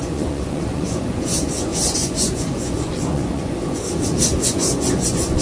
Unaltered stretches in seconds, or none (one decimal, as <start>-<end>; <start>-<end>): none